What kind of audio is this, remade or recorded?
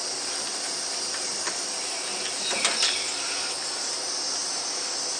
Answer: recorded